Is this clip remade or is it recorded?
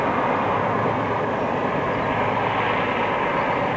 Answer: recorded